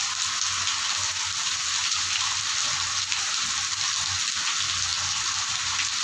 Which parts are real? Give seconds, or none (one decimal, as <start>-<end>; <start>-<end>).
0.0-1.4; 4.4-6.0